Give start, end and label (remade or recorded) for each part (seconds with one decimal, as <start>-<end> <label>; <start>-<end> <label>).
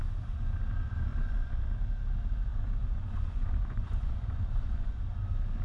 0.0-1.1 recorded; 1.1-1.7 remade; 1.7-2.5 recorded; 2.5-5.0 remade; 5.0-5.6 recorded